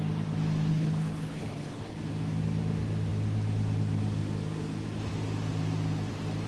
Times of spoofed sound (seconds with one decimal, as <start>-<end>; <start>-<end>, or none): 0.7-2.0